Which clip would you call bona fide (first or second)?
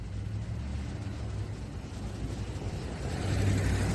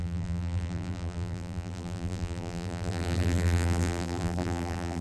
first